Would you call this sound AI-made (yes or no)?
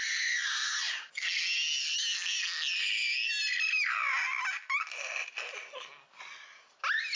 no